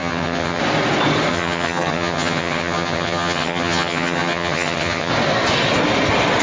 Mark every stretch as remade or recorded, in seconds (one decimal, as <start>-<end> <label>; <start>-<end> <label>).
0.0-0.6 remade; 0.6-1.3 recorded; 1.3-5.1 remade; 5.1-6.4 recorded